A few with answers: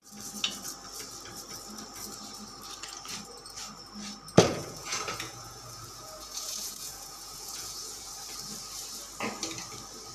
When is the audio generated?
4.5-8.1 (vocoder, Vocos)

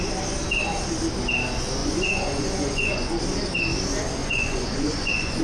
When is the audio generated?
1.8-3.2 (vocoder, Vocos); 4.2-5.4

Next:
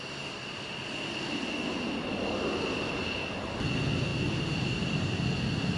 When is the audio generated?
none

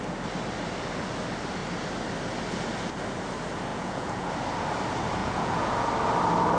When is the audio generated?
3.7-4.3 (vocoder, Vocos); 5.2-5.9

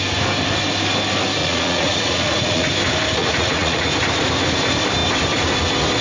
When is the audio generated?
1.4-2.7 (vocoder, Vocos); 3.2-3.9

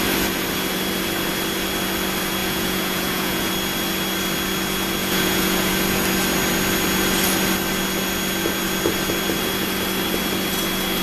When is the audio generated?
2.4-3.5 (vocoder, Vocos); 5.0-5.7

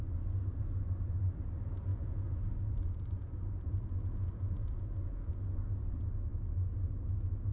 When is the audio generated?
1.9-5.3 (vocoder, Vocos)

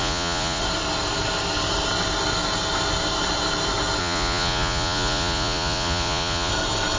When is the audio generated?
0.0-0.6 (vocoder, Vocos); 4.0-6.5